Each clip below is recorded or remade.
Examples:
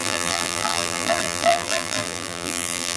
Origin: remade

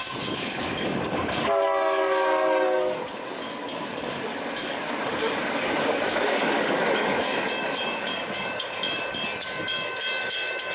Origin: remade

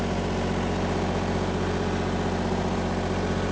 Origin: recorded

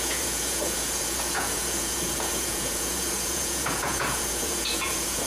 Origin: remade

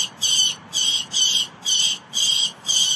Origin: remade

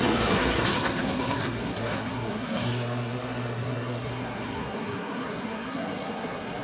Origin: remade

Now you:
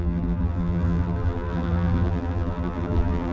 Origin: remade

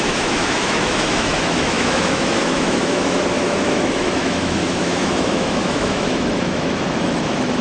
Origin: remade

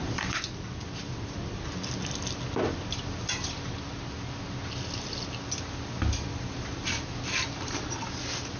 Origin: recorded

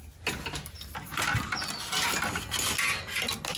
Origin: recorded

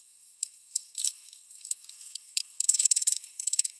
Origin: remade